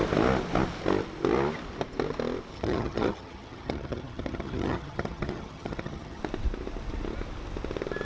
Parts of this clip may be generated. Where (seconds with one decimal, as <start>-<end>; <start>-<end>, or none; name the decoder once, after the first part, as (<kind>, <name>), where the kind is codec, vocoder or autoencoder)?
2.5-6.2 (vocoder, HiFi-GAN)